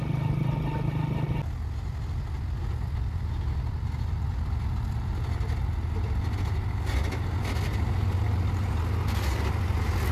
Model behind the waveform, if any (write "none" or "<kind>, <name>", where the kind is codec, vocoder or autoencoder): none